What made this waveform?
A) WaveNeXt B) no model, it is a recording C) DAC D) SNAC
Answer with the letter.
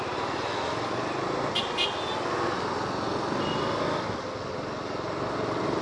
B